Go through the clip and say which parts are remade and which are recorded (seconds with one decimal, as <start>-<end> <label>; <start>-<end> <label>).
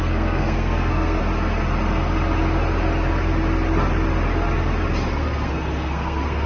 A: 0.0-1.2 remade; 1.2-5.1 recorded; 5.1-6.5 remade